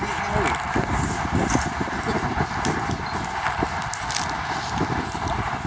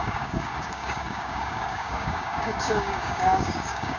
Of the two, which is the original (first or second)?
first